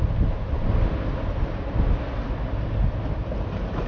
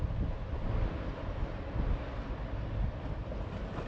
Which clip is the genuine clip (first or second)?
first